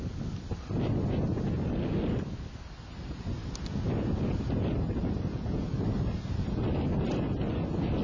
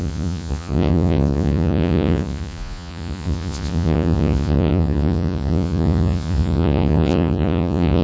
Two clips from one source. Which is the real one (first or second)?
first